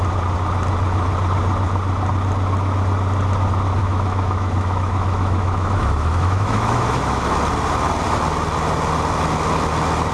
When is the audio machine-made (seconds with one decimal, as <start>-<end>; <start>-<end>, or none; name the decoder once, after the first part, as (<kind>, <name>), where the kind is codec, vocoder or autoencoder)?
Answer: 3.8-7.3 (autoencoder, DAC-VAE)